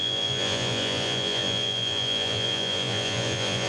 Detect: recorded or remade remade